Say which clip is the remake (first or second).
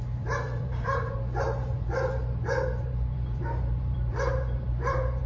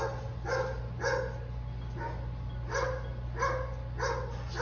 first